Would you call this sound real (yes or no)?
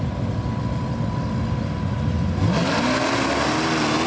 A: yes